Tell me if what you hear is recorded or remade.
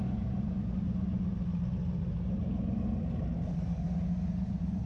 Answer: recorded